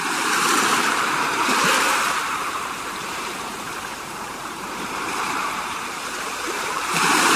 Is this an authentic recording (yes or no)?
no